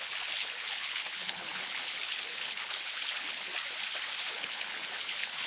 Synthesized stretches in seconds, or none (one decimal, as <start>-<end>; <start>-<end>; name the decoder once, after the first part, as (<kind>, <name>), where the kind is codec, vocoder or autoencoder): 0.0-3.5 (codec, HILCodec); 4.3-5.5

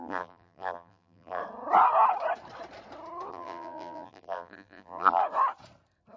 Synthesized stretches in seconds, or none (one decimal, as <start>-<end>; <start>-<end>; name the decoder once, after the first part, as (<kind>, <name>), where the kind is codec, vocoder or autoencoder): 0.0-1.4 (vocoder, BigVGAN v2); 3.3-5.2